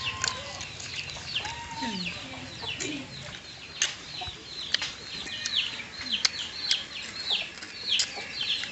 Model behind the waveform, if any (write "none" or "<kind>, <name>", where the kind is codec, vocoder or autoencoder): none